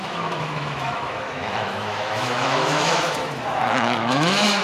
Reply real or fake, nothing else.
fake